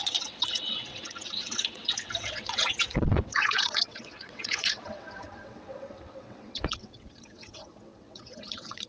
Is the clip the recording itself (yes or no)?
no